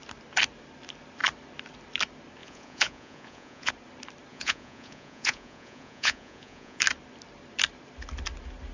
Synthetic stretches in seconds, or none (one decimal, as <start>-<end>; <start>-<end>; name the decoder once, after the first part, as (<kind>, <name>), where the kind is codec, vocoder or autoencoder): 2.4-3.7 (vocoder, Vocos); 4.3-6.8